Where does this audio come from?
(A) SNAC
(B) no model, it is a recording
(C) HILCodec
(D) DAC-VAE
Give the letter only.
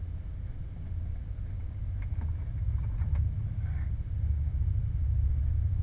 B